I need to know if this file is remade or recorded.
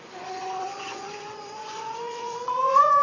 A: remade